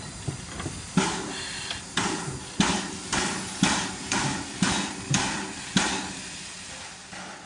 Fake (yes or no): no